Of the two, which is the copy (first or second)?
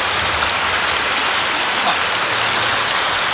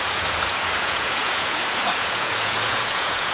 second